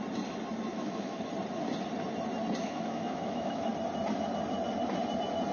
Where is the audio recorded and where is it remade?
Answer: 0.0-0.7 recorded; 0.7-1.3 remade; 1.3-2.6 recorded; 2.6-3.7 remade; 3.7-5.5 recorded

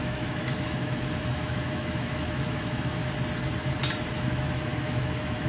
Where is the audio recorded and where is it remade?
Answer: 0.0-3.0 remade; 3.0-4.1 recorded; 4.1-5.5 remade